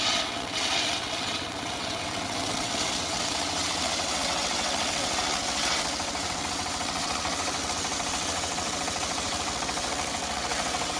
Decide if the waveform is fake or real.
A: fake